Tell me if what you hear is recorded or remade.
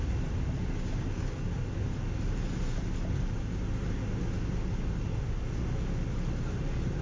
recorded